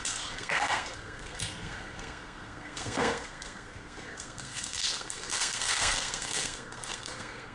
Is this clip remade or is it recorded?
remade